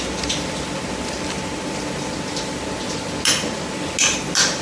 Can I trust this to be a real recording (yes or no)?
yes